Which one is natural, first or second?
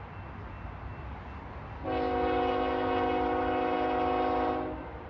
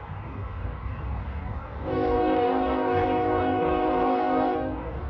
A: first